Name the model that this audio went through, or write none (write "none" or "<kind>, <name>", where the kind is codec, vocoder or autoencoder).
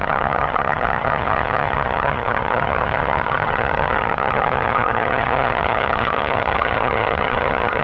vocoder, HiFi-GAN